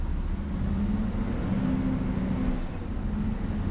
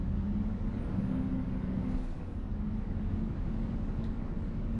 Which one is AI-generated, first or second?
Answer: second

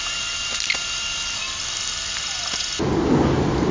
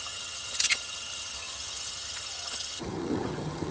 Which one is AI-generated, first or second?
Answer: second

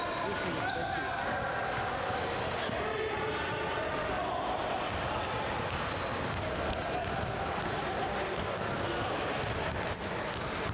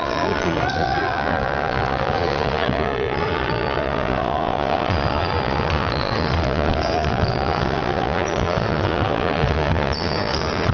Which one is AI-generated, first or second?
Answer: second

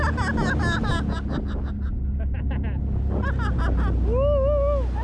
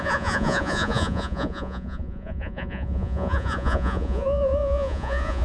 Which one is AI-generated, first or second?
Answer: second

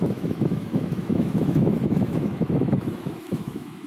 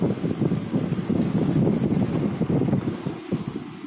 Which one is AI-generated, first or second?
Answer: first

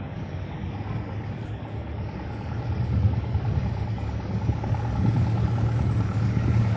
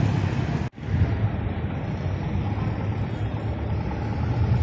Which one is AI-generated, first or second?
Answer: first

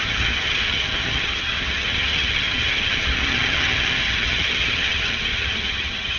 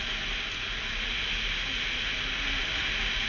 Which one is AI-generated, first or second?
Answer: first